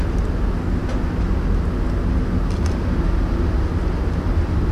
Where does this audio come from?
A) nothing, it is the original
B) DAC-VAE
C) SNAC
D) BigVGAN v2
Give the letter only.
A